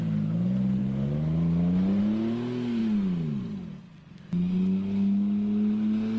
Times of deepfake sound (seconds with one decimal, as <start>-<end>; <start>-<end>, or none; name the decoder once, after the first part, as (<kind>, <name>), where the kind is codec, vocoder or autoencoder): none